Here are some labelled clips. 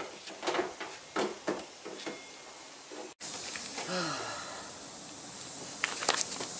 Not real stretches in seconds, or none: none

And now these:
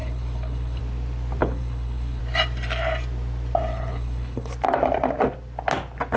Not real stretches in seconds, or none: 0.0-0.8; 1.4-2.2; 3.7-4.5

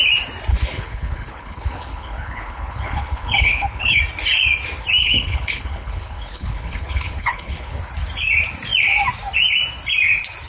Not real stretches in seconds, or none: 0.5-4.0; 5.0-7.8

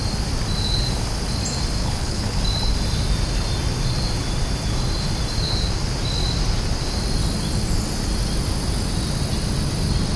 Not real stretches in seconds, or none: 1.8-2.4

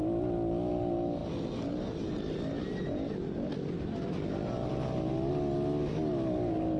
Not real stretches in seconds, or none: none

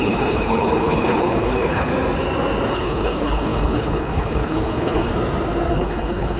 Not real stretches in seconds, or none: 0.0-1.9; 2.7-5.1; 5.7-6.4

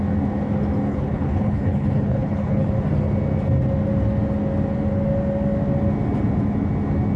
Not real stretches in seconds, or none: 0.9-2.7

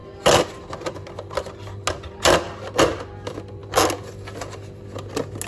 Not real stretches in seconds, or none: none